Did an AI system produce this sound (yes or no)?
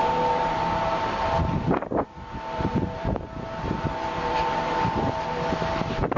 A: yes